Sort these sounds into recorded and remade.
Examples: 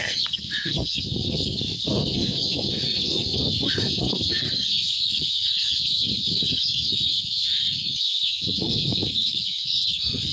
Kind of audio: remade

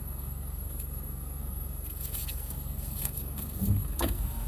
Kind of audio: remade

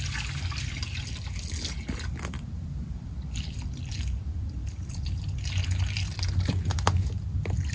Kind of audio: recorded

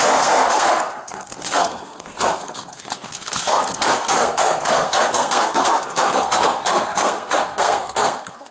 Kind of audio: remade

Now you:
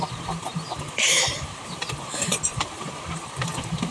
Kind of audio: recorded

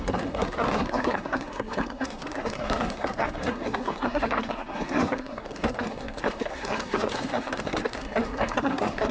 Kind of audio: remade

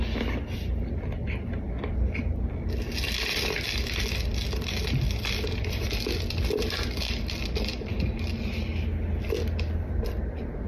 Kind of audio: recorded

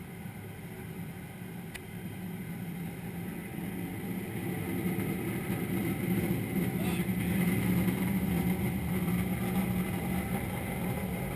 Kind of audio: recorded